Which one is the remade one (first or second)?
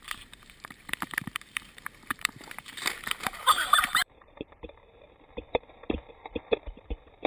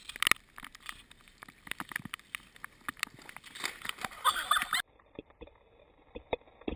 first